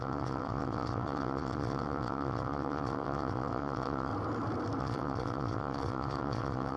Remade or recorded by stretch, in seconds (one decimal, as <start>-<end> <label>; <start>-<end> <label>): 0.0-4.1 remade; 4.1-4.8 recorded; 4.8-6.8 remade